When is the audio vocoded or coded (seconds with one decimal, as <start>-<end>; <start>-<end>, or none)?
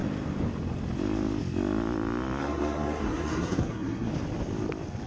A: 2.4-4.1